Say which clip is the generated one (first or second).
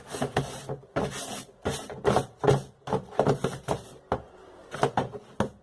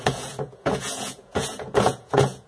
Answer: second